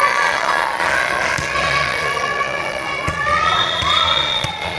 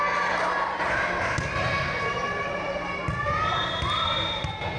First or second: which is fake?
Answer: first